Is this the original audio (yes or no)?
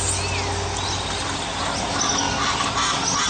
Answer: yes